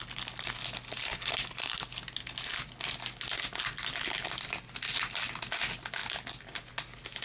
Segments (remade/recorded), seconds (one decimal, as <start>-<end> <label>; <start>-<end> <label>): 0.0-7.2 recorded